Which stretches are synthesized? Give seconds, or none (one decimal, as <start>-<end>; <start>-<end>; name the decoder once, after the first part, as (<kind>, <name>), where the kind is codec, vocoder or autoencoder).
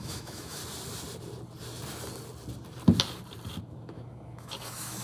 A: 0.0-0.6 (autoencoder, DAC-VAE); 3.6-5.0